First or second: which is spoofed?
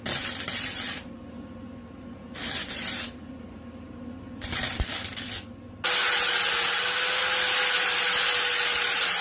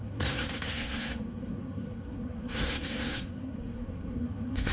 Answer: second